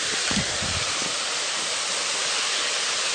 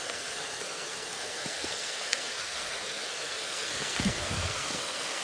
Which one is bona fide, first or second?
first